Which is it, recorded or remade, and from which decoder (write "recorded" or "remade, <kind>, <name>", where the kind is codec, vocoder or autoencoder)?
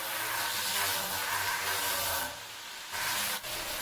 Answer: remade, vocoder, BigVGAN v2